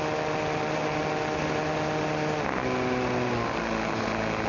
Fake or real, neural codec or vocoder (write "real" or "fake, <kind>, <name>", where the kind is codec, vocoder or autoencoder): real